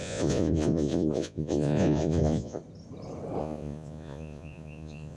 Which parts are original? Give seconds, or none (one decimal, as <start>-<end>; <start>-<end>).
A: 2.6-3.4